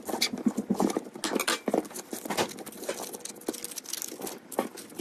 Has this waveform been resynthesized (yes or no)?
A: no